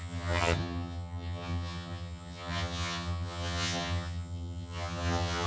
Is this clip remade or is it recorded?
remade